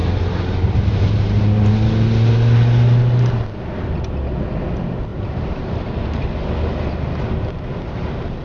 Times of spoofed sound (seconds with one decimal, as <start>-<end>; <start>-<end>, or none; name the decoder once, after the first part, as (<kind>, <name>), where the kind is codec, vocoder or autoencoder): 0.0-1.7 (vocoder, BigVGAN v2); 5.1-6.3